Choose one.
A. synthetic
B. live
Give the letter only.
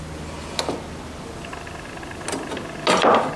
B